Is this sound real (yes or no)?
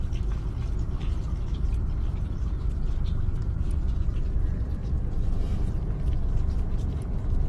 yes